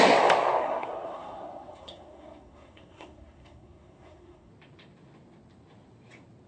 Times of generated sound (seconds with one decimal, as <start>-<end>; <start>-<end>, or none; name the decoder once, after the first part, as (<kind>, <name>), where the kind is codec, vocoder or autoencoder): 0.6-4.5 (codec, SNAC)